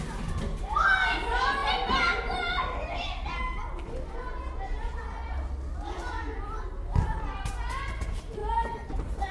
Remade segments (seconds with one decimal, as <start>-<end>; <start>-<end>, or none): none